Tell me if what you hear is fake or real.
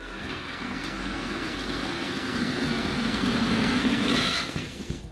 fake